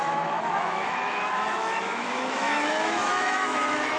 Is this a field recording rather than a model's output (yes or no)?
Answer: no